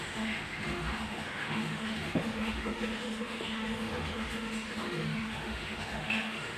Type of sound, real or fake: fake